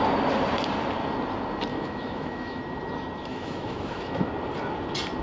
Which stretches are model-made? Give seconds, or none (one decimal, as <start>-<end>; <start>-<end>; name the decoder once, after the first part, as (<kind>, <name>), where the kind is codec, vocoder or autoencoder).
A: 1.7-2.6 (autoencoder, DAC-VAE); 3.3-4.3